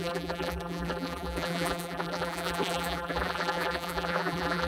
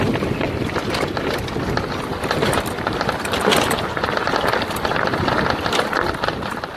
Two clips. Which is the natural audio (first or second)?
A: second